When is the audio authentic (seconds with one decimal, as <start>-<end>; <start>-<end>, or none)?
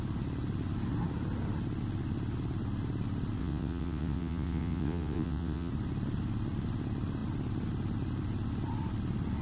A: 0.0-3.4; 5.7-9.4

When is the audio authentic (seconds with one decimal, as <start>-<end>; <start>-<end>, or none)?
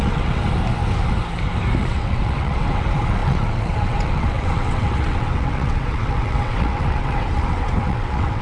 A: 0.4-1.8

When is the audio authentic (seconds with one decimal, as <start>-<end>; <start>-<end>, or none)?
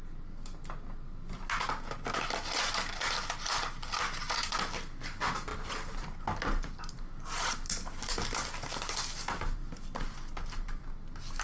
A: 0.0-11.4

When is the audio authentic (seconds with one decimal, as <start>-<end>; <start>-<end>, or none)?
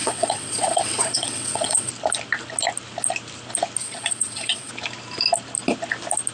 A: 1.9-3.8; 4.7-6.3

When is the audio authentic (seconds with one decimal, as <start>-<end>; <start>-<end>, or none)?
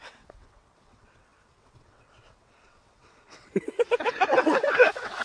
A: none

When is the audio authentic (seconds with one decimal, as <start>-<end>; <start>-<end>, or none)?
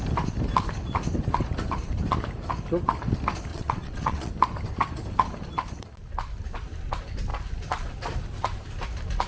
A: 0.0-3.5; 4.3-9.3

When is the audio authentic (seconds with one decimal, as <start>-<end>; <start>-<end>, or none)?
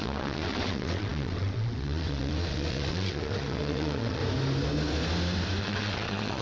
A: 4.2-5.6